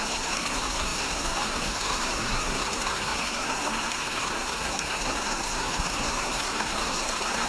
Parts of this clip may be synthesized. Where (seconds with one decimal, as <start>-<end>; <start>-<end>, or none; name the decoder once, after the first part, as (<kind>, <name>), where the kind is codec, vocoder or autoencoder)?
0.0-7.5 (codec, SNAC)

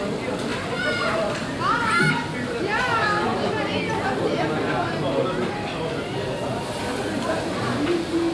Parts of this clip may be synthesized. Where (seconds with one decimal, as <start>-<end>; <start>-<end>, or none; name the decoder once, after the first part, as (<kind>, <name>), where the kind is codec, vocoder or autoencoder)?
none

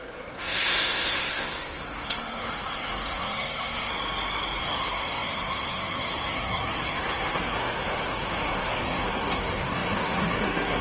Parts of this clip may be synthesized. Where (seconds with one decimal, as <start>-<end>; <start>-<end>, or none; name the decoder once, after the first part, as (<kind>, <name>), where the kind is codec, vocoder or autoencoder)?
0.0-3.9 (codec, SNAC); 4.6-10.8

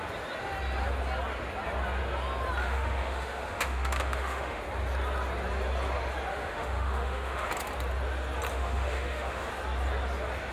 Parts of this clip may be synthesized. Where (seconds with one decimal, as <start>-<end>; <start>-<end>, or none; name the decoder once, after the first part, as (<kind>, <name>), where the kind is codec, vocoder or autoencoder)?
2.6-4.6 (autoencoder, DAC-VAE); 6.3-7.5; 8.5-9.5

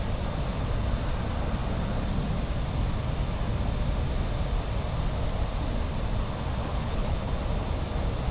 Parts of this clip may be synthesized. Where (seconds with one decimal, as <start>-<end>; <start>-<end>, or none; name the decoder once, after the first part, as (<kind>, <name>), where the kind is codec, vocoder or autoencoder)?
6.6-7.3 (codec, HILCodec)

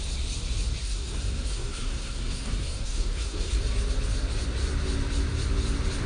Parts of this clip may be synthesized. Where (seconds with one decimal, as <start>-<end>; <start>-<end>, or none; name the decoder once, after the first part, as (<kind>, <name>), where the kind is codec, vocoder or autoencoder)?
0.8-3.6 (codec, SNAC)